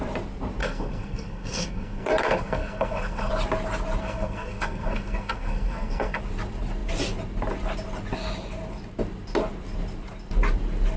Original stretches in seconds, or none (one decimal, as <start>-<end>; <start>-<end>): 0.0-0.6; 3.3-4.0; 6.2-11.0